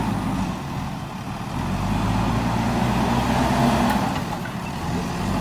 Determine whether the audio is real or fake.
real